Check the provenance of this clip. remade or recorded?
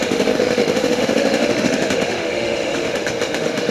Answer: remade